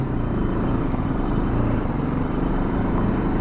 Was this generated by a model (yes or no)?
yes